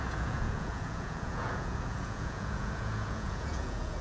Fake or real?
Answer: fake